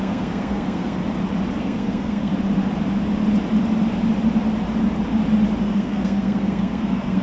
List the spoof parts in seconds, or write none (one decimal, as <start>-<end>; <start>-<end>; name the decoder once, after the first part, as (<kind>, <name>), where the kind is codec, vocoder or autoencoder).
0.0-1.0 (codec, SNAC); 1.6-2.3; 5.6-7.2